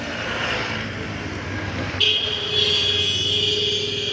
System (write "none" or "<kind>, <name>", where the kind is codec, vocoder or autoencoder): none